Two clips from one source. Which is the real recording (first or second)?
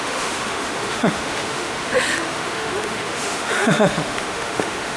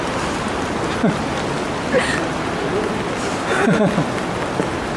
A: second